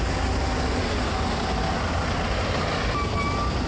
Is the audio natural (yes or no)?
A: yes